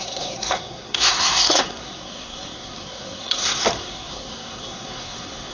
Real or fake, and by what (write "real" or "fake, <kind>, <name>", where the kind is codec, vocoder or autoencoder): fake, codec, SNAC